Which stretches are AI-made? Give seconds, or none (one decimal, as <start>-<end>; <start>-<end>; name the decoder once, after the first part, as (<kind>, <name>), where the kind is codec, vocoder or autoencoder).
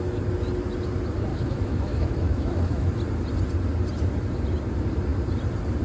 1.3-2.9 (autoencoder, DAC-VAE)